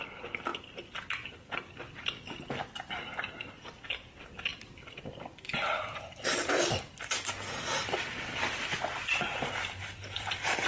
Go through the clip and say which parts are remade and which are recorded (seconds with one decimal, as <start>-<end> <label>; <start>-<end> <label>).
0.0-10.7 recorded